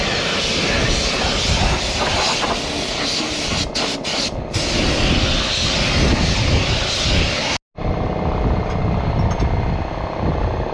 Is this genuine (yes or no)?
yes